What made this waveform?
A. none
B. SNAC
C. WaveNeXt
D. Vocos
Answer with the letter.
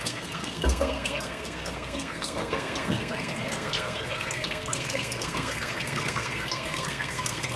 B